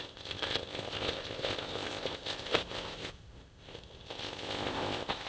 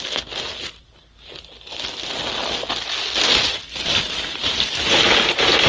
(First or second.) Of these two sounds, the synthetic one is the first